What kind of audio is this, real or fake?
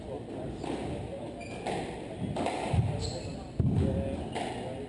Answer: real